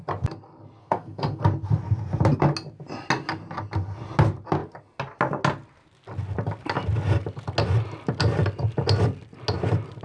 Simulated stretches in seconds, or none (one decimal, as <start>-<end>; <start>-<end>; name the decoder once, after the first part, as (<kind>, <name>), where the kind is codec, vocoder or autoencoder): 0.8-1.4 (codec, SNAC)